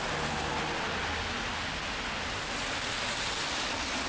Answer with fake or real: real